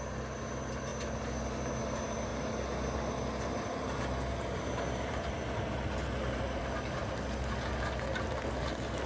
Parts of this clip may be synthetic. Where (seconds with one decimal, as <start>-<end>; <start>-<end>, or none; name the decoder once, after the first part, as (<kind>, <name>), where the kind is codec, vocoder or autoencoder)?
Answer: none